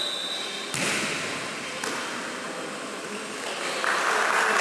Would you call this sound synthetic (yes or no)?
no